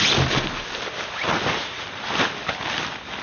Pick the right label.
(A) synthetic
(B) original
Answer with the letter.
B